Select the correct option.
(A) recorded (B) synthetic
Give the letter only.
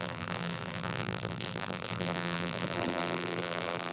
B